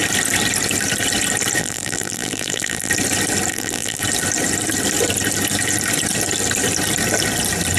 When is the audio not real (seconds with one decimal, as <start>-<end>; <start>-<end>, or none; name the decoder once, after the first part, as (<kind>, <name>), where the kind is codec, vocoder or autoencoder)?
1.6-2.9 (vocoder, BigVGAN v2); 3.5-4.0